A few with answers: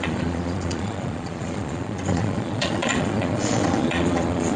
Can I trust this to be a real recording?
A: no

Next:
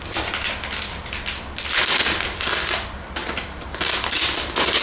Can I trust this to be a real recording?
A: yes